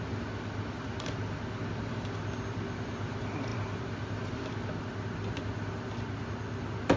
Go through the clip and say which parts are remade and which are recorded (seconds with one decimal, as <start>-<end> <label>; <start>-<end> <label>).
0.0-7.0 recorded